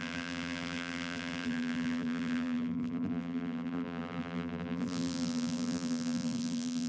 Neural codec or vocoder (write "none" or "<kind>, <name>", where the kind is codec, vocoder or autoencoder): vocoder, BigVGAN v2